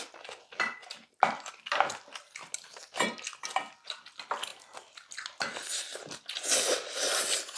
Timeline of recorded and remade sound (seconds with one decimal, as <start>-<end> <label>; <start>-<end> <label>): 0.0-7.6 recorded